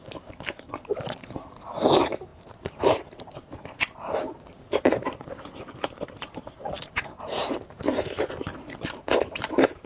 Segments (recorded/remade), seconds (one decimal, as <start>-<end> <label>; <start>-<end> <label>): 0.0-7.4 remade; 7.4-8.4 recorded; 8.4-9.9 remade